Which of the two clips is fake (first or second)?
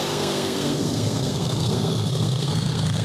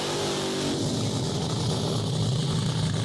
first